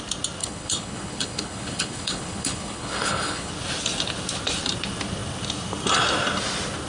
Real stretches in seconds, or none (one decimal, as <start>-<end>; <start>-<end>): 0.0-0.4; 3.5-6.9